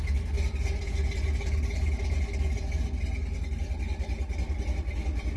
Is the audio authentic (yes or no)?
yes